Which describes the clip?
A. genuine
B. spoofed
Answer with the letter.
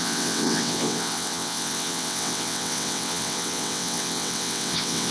B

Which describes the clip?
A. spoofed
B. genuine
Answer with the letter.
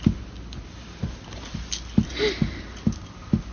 B